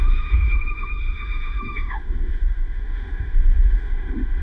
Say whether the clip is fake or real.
fake